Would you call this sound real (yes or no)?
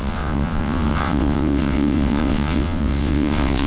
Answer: no